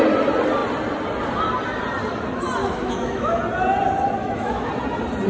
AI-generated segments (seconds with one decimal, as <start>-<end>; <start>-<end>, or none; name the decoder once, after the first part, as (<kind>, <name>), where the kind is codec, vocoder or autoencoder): 2.6-3.4 (autoencoder, DAC-VAE); 4.2-4.7